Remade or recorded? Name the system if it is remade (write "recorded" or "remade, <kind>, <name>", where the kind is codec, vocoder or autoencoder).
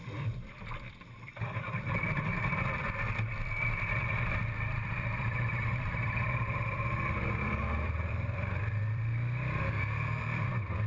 remade, vocoder, BigVGAN v2